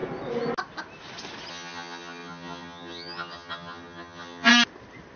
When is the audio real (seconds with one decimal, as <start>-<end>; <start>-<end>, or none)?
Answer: 0.0-1.5; 4.5-5.2